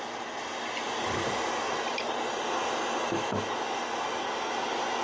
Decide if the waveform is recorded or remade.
recorded